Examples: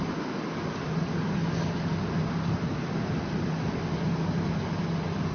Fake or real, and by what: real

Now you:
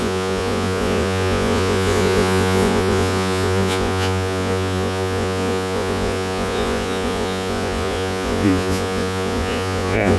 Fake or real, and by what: fake, vocoder, Vocos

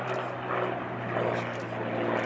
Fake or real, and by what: real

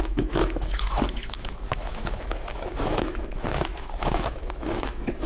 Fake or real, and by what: fake, autoencoder, DAC-VAE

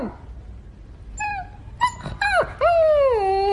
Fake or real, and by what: real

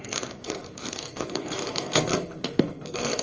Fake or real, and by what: fake, codec, SNAC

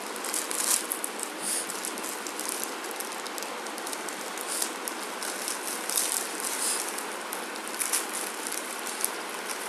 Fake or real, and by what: real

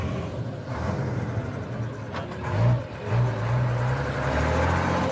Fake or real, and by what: real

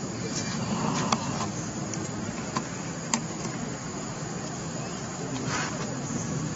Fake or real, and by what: real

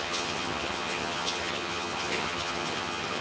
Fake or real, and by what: fake, vocoder, HiFi-GAN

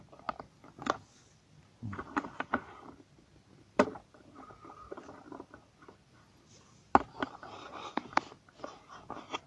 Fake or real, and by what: real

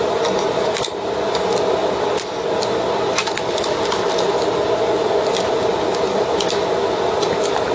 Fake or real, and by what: real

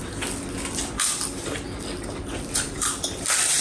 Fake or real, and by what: real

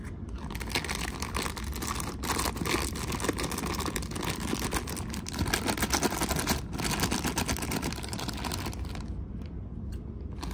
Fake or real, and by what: real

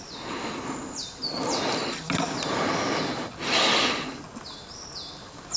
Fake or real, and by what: real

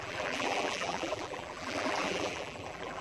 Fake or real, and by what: fake, vocoder, BigVGAN v2